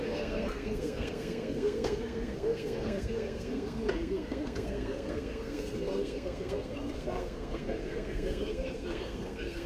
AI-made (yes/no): yes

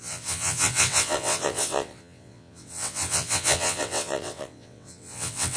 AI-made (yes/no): yes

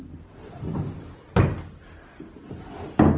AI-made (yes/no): no